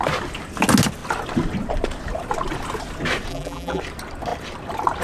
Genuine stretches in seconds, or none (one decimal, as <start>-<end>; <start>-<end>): 0.0-3.3; 3.8-5.0